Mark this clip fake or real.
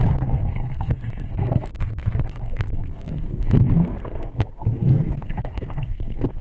fake